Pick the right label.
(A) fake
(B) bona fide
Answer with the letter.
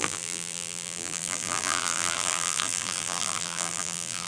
A